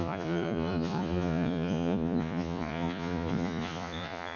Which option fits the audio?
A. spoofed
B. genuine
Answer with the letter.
A